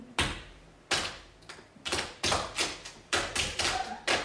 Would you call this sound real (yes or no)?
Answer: yes